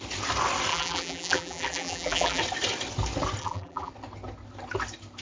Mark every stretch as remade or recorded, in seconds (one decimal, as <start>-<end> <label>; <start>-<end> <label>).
0.0-0.7 recorded; 0.7-2.4 remade; 2.4-3.4 recorded; 3.4-3.9 remade; 3.9-5.2 recorded